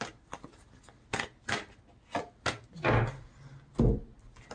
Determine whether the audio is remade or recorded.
recorded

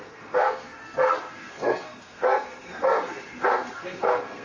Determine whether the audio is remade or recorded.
remade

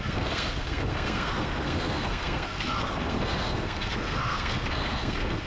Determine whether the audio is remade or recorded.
remade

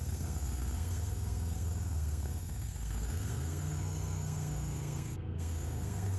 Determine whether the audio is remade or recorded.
remade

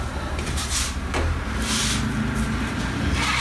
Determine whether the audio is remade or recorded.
recorded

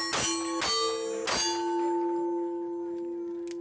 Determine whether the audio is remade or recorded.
recorded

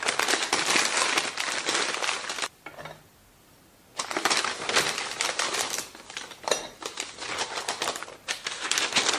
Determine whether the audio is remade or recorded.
recorded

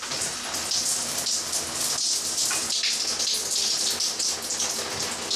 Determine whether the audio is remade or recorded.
recorded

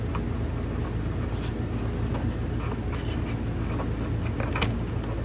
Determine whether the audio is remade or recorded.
recorded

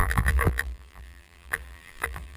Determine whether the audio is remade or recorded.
remade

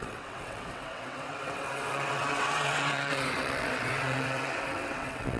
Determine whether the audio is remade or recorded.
remade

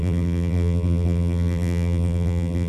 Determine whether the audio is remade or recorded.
remade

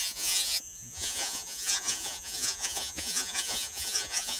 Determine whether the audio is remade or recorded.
remade